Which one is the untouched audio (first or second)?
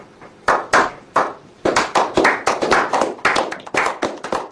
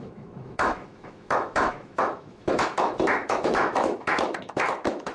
first